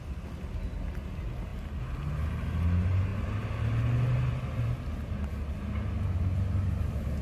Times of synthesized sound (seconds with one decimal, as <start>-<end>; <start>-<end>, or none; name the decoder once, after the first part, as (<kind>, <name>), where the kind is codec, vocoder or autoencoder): none